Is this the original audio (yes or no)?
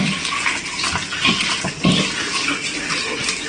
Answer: yes